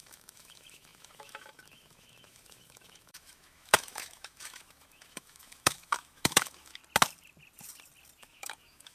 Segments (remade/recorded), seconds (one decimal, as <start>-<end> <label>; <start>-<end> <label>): 0.0-6.8 remade; 6.8-8.2 recorded; 8.2-8.9 remade